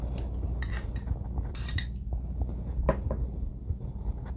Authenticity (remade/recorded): recorded